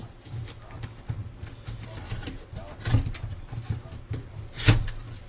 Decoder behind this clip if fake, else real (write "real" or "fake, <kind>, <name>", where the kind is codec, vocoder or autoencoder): real